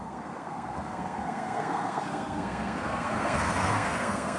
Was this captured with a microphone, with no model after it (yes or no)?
no